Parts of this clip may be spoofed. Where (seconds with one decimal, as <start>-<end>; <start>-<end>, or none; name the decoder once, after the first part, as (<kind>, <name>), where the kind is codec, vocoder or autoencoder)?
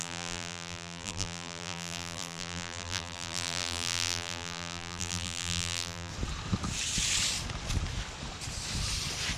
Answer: 0.0-6.1 (vocoder, BigVGAN v2)